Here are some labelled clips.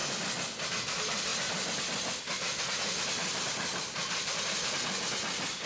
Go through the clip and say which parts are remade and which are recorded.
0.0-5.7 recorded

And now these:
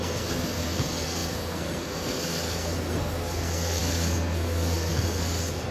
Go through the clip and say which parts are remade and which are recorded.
0.0-5.7 remade